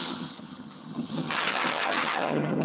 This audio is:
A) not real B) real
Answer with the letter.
A